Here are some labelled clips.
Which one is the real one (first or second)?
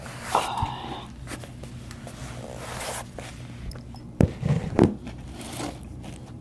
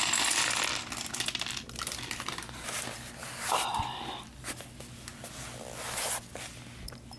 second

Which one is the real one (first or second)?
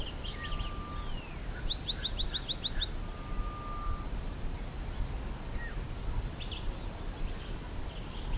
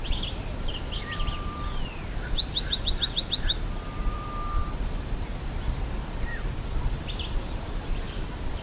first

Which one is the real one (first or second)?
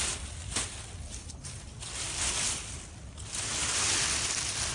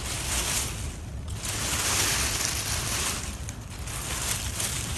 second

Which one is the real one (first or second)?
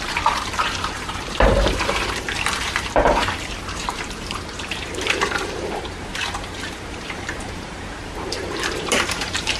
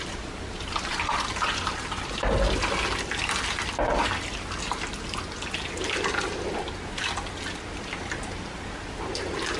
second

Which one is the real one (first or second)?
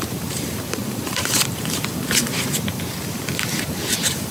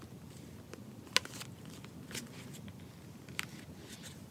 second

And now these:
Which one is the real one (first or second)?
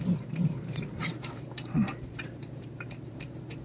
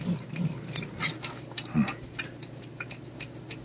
second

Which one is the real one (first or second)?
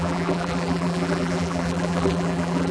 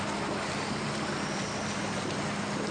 second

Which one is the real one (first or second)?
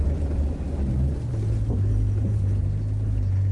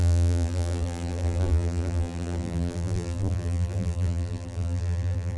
first